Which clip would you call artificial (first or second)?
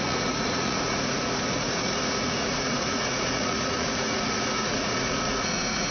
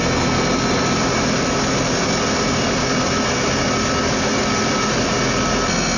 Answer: first